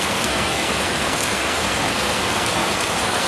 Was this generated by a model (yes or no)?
yes